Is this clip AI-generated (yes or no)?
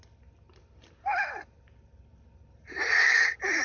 no